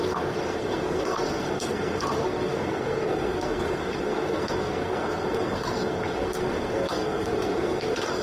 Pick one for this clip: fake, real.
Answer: fake